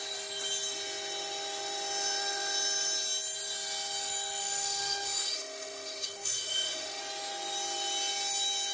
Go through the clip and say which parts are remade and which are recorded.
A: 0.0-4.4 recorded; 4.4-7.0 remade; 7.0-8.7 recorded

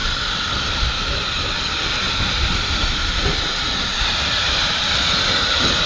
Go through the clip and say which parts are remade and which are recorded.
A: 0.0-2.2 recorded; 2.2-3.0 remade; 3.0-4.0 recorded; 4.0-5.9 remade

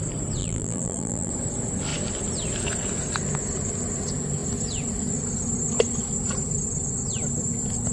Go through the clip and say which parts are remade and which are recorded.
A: 0.0-0.4 recorded; 0.4-1.3 remade; 1.3-7.9 recorded

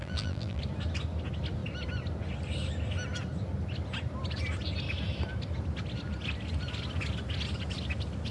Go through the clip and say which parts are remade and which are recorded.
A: 0.0-0.6 remade; 0.6-8.3 recorded

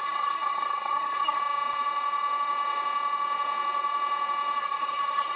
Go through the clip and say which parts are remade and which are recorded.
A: 0.0-1.4 remade; 1.4-4.6 recorded; 4.6-5.4 remade

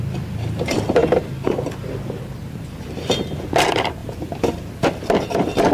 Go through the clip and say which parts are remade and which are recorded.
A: 0.0-4.0 recorded; 4.0-5.7 remade